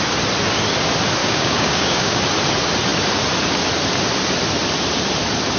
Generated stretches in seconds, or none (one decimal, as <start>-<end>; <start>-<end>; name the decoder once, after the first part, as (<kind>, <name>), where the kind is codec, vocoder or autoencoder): 1.2-2.2 (codec, DAC)